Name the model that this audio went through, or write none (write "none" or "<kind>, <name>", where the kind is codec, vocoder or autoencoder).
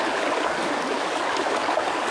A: codec, DAC